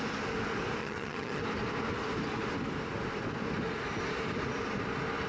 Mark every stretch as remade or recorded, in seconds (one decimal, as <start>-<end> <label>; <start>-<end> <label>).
0.0-0.8 recorded; 0.8-1.4 remade; 1.4-5.3 recorded

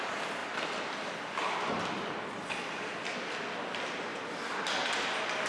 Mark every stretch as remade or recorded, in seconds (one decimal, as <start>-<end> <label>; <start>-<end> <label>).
0.0-5.5 recorded

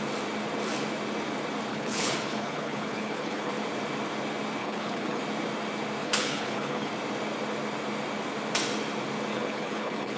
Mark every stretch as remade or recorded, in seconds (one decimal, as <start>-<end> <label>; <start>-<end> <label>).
0.0-1.7 recorded; 1.7-3.5 remade; 3.5-4.6 recorded; 4.6-5.2 remade; 5.2-6.0 recorded; 6.0-6.9 remade; 6.9-9.3 recorded; 9.3-10.2 remade

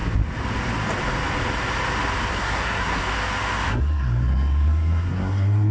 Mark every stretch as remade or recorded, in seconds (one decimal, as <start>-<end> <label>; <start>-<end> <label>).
0.0-2.3 recorded; 2.3-3.0 remade; 3.0-3.7 recorded; 3.7-5.7 remade

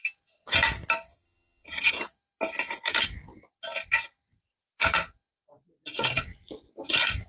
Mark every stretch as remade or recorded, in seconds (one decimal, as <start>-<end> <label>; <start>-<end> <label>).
0.0-1.1 recorded; 1.1-1.9 remade; 1.9-7.3 recorded

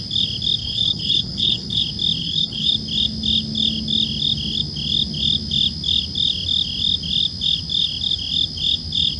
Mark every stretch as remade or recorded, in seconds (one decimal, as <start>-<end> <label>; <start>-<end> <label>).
0.0-0.6 recorded; 0.6-1.8 remade; 1.8-2.2 recorded; 2.2-2.7 remade; 2.7-9.2 recorded

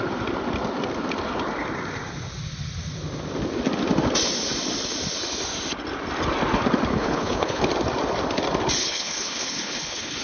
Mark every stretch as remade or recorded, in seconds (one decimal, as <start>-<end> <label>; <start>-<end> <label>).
0.0-6.9 recorded; 6.9-7.6 remade; 7.6-8.8 recorded; 8.8-10.2 remade